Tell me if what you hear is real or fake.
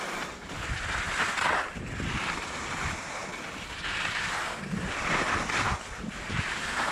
real